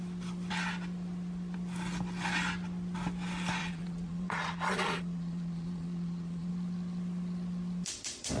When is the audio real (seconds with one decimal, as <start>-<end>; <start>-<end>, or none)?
0.0-3.6; 6.5-8.4